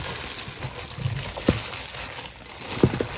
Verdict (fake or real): real